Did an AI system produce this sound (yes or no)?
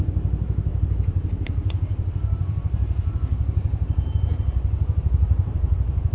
yes